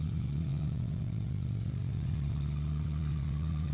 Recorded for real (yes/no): no